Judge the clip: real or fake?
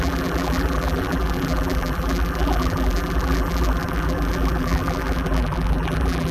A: fake